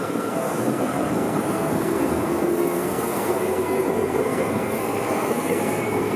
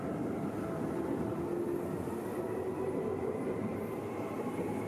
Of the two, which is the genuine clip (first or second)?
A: second